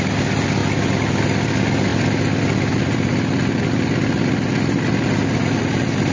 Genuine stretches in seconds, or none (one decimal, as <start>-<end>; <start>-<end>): 0.0-6.1